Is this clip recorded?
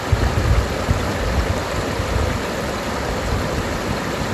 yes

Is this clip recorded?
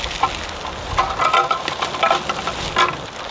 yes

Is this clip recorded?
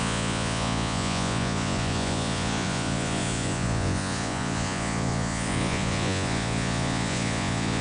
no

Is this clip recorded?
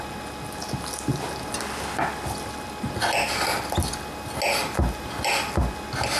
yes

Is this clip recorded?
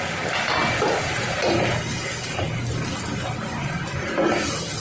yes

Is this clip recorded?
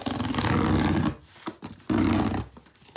yes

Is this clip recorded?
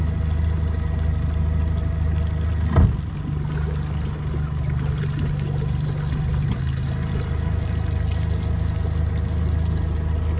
yes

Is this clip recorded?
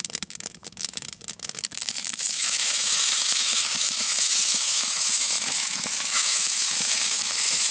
no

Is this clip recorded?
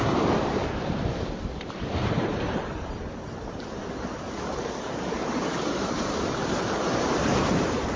no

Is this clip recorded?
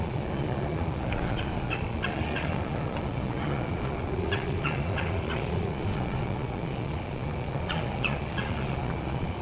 no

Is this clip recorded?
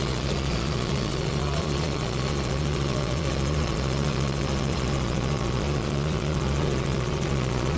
no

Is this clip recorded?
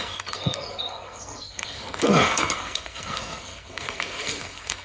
no